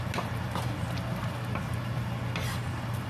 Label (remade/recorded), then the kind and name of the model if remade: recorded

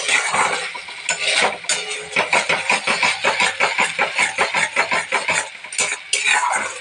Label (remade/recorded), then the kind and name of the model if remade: recorded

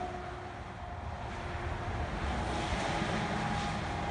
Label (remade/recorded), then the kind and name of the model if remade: recorded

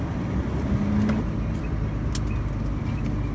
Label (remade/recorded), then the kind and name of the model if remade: recorded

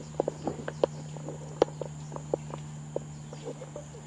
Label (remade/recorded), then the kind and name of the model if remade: recorded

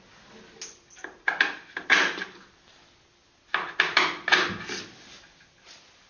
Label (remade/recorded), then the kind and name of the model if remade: recorded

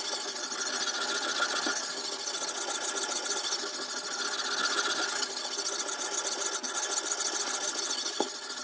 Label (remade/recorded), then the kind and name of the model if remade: recorded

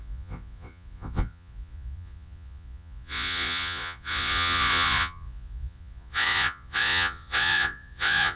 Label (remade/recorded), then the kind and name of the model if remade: remade, vocoder, Vocos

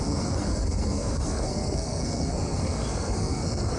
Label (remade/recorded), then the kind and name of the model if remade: remade, codec, SNAC